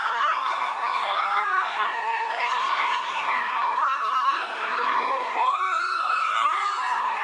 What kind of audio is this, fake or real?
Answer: fake